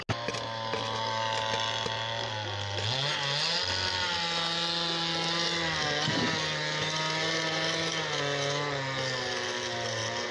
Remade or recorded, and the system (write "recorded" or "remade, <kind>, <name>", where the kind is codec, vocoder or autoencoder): recorded